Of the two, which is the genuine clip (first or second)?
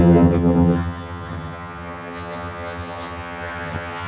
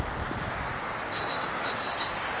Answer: second